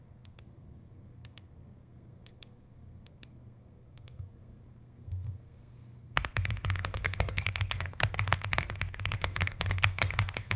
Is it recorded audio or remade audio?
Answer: remade